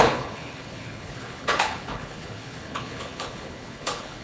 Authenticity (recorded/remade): remade